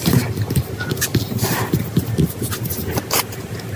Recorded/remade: recorded